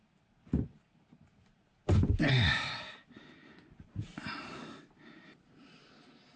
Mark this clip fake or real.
real